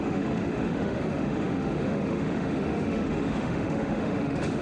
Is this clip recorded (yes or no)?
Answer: no